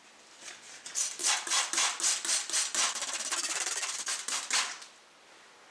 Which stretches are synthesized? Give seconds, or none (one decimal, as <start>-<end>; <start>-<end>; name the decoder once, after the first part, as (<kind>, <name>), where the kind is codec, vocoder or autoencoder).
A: none